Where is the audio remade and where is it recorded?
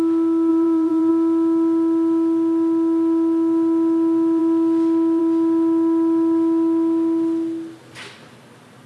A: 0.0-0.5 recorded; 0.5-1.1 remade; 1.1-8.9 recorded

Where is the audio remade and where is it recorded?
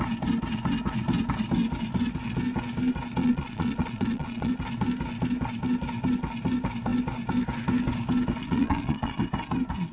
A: 0.0-3.2 recorded; 3.2-4.5 remade; 4.5-8.4 recorded; 8.4-9.2 remade; 9.2-9.9 recorded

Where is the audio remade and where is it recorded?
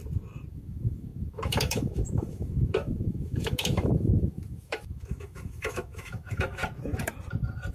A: 0.0-0.5 recorded; 0.5-6.6 remade; 6.6-7.7 recorded